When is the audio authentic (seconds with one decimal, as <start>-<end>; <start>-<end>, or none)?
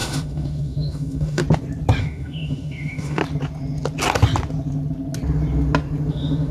1.4-2.0; 3.2-6.1